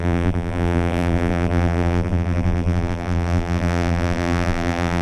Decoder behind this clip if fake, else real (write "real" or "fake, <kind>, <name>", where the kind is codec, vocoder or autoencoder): fake, vocoder, BigVGAN v2